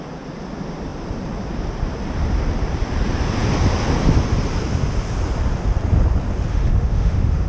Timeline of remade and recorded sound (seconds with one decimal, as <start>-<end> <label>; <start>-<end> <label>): 0.0-6.5 recorded; 6.5-7.5 remade